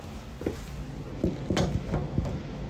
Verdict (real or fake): real